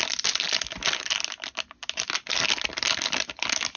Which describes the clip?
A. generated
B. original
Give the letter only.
B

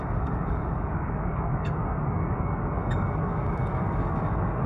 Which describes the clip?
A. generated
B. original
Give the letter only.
A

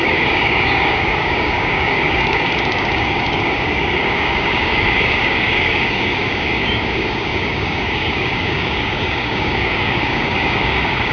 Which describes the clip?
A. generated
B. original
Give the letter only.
A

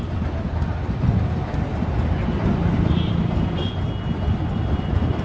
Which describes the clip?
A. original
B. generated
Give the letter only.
A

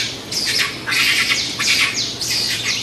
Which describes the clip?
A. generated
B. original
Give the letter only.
B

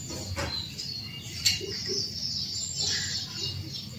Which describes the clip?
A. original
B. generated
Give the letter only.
A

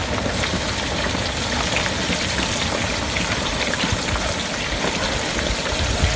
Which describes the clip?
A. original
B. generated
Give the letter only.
A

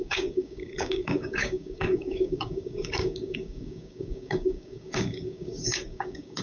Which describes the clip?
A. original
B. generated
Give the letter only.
B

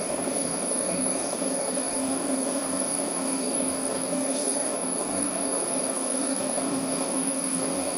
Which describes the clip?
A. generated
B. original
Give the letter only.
A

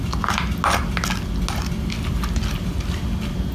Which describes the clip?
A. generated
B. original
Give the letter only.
B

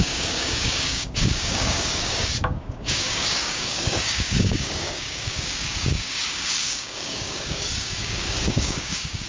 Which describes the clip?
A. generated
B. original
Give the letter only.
A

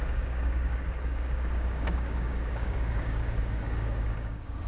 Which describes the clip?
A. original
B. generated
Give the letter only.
B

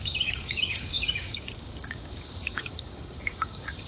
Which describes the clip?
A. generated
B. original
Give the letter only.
A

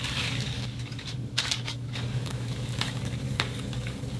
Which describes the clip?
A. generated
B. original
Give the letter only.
A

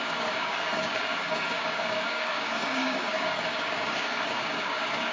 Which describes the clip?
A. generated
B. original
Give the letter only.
A